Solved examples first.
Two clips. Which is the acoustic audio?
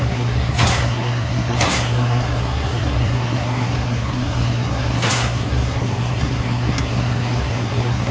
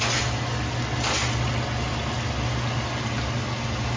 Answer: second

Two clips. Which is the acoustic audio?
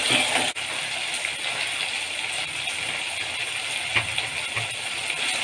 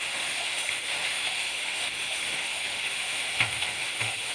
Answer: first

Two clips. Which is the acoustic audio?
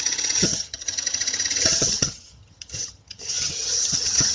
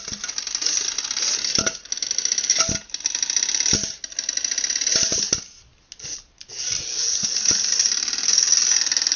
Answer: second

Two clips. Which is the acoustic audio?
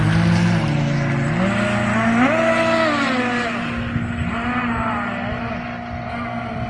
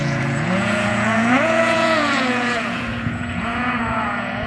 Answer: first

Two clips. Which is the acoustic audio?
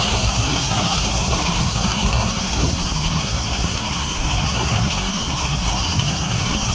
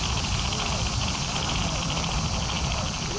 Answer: second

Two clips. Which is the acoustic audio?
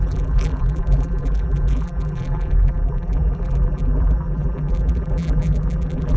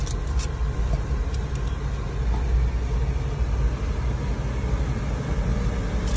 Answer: second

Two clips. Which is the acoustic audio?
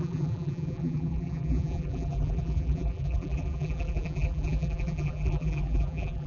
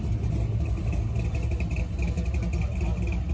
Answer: second